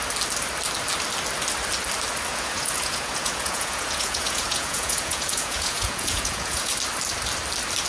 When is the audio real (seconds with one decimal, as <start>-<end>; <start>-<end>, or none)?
0.0-2.3; 6.7-7.9